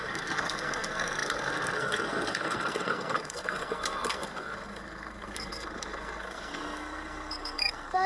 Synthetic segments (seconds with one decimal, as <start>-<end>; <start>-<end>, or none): 0.0-8.1